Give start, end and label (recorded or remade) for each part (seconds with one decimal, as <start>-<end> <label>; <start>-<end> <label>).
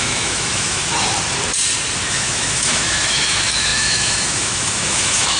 0.0-0.8 remade; 0.8-2.1 recorded; 2.1-5.4 remade